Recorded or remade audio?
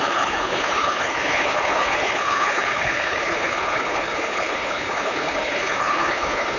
remade